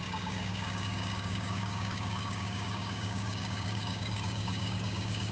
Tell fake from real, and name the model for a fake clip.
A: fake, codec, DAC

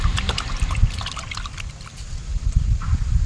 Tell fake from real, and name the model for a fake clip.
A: real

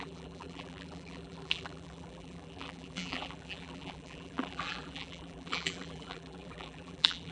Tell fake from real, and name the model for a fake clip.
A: fake, vocoder, BigVGAN v2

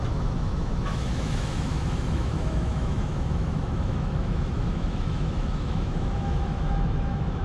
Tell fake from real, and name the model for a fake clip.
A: fake, autoencoder, DAC-VAE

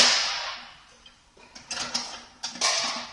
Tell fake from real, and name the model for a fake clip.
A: real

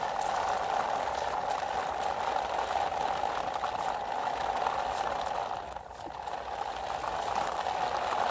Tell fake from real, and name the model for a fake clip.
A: real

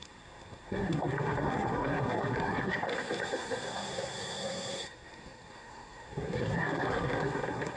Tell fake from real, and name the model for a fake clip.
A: fake, codec, SNAC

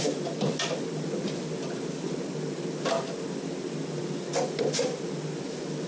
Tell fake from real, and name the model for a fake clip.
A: real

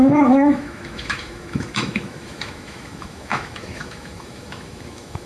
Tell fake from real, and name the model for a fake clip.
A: fake, autoencoder, DAC-VAE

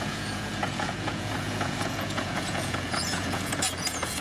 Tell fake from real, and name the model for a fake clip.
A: fake, vocoder, Vocos